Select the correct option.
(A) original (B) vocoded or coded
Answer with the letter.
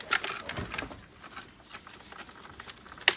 A